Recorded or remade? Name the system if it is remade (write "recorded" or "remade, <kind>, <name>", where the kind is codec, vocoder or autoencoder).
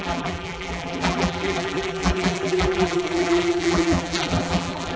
remade, vocoder, BigVGAN v2